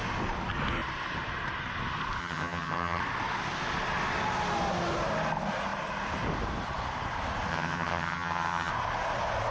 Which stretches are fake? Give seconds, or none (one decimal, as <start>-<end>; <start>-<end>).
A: 2.2-3.0; 7.5-8.7